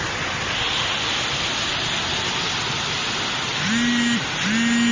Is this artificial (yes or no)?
no